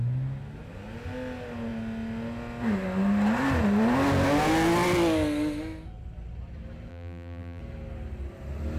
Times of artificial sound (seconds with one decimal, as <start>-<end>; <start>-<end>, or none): 6.9-7.6